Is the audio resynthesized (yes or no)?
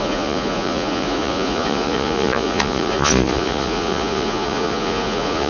yes